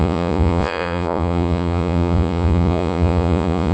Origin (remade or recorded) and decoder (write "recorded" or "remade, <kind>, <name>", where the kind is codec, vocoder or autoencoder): remade, vocoder, Vocos